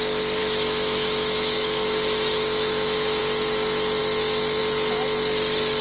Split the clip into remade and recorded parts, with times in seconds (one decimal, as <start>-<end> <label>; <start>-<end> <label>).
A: 0.0-0.4 recorded; 0.4-3.2 remade; 3.2-5.8 recorded